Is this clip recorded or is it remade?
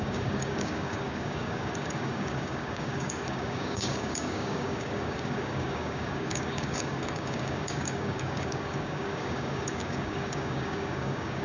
remade